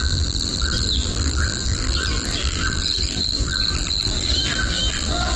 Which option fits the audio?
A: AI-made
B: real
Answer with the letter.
A